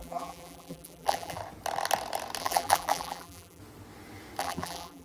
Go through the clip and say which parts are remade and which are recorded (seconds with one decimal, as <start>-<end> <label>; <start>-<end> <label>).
0.0-1.4 remade; 1.4-2.4 recorded; 2.4-3.6 remade; 3.6-4.4 recorded; 4.4-5.0 remade